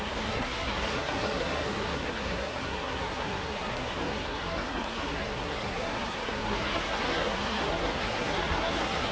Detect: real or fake fake